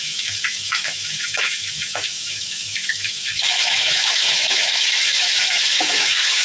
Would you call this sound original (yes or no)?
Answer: no